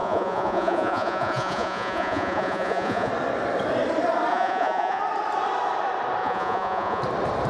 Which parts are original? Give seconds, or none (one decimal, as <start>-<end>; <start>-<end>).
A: 3.1-4.3; 5.0-6.2; 7.0-7.5